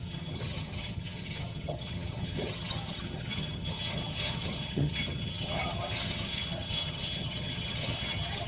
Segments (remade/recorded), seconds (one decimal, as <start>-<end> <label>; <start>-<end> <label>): 0.0-8.5 remade